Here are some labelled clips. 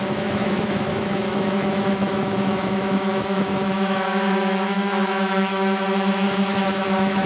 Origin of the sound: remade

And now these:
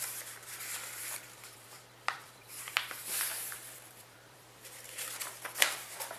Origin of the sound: remade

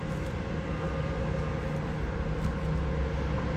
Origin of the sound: recorded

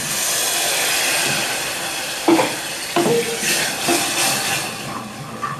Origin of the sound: recorded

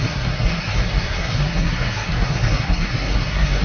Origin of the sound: remade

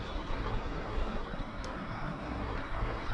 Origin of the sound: remade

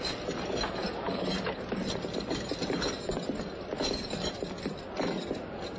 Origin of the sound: recorded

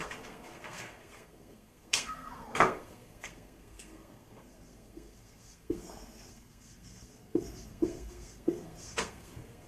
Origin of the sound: remade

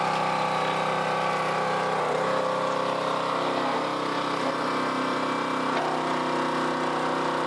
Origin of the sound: recorded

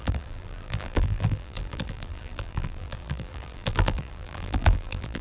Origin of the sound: remade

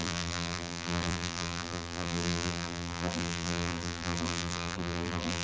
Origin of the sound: remade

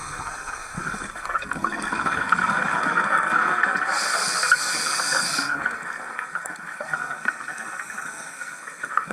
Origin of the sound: remade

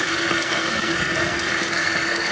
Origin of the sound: remade